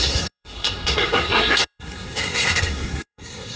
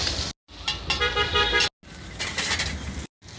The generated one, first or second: first